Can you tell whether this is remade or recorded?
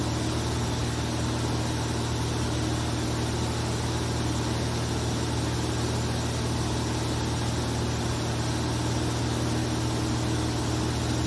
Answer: recorded